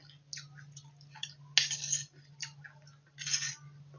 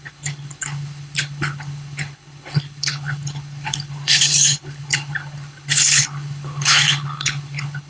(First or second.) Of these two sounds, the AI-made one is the second